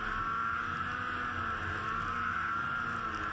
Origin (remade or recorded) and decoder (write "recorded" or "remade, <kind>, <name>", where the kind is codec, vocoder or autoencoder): recorded